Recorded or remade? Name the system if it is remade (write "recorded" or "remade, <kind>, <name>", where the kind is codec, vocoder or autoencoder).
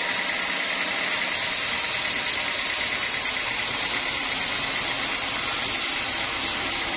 recorded